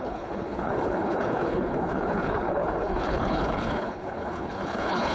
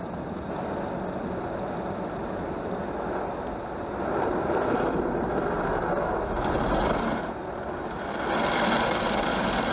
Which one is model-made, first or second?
first